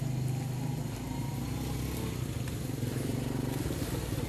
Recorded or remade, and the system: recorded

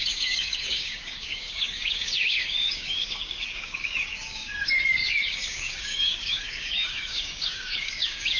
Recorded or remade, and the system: remade, codec, DAC